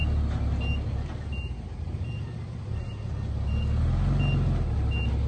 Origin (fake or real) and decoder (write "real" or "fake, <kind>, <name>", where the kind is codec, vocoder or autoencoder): real